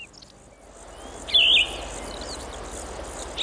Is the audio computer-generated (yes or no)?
no